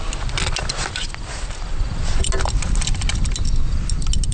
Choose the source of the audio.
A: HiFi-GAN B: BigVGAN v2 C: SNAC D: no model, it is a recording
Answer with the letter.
D